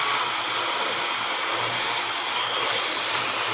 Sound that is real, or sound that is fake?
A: fake